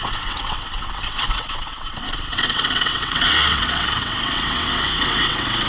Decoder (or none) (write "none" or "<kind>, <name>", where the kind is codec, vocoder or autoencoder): vocoder, WaveNeXt